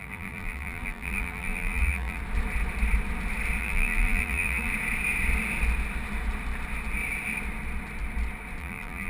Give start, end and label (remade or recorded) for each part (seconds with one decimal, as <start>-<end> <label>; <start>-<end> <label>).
0.0-2.2 remade; 2.2-3.6 recorded; 3.6-4.7 remade; 4.7-8.6 recorded; 8.6-9.1 remade